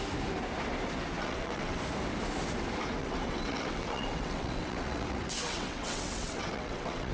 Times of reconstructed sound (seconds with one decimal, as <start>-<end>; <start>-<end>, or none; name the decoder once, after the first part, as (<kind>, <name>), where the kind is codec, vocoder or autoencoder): 1.2-1.8 (vocoder, WaveNeXt); 3.0-7.1